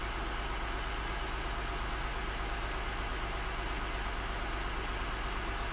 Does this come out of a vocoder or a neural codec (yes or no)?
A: no